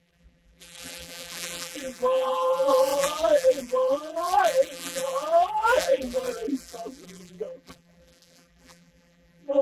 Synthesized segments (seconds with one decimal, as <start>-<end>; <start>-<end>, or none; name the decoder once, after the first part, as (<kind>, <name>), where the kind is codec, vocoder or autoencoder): 0.0-9.6 (vocoder, BigVGAN v2)